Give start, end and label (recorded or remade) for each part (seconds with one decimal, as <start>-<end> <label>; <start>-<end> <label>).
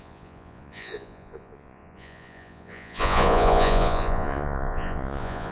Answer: 0.0-5.5 remade